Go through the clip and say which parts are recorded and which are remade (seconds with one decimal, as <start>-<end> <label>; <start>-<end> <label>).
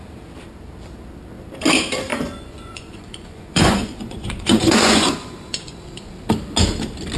0.0-2.1 recorded; 2.1-6.1 remade; 6.1-7.2 recorded